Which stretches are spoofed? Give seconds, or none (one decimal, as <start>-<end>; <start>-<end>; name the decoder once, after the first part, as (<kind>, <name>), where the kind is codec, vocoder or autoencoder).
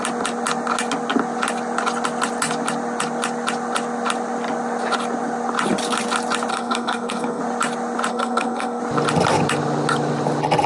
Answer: 6.5-7.4 (codec, SNAC); 8.1-8.8